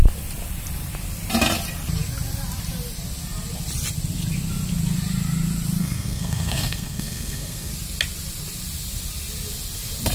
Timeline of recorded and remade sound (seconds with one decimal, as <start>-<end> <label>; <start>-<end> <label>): 0.0-5.8 recorded; 5.8-7.7 remade; 7.7-10.1 recorded